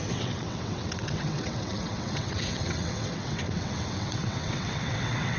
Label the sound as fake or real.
fake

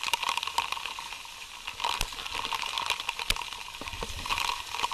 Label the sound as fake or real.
real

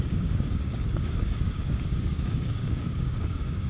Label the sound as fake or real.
fake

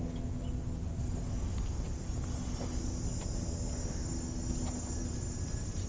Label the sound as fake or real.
real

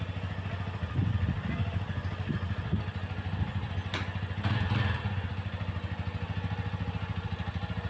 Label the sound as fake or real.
real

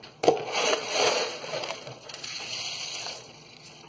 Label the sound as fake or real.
fake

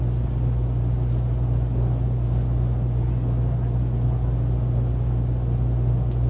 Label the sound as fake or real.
real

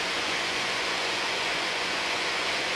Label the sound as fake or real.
fake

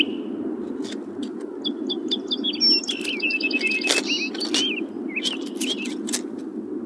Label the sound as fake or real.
real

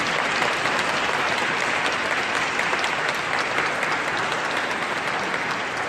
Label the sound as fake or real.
real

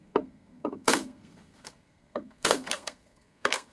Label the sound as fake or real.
fake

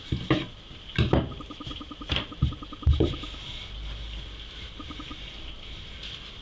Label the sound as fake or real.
real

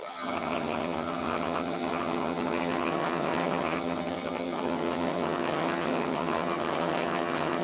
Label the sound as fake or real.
fake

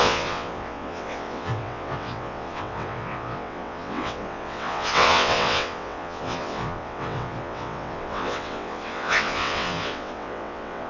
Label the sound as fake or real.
fake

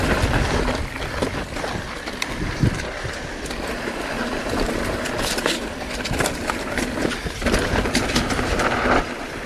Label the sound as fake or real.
fake